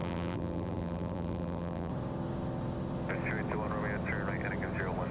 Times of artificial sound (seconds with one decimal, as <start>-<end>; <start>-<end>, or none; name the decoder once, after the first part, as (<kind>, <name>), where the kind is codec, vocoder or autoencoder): 0.0-1.9 (vocoder, BigVGAN v2)